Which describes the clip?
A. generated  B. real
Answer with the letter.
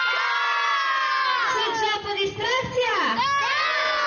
B